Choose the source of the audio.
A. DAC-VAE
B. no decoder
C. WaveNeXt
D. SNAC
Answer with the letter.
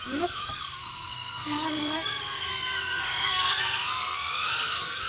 D